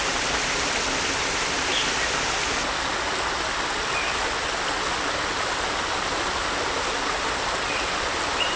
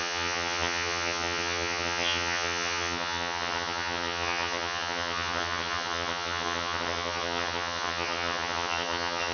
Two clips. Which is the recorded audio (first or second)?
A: first